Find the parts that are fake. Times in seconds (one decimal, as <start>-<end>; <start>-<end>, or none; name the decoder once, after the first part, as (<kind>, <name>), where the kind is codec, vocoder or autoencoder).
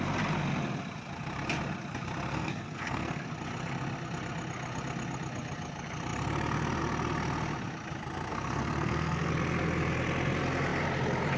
2.3-3.2 (codec, SNAC); 8.3-9.3